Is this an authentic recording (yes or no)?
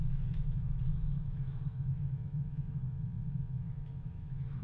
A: no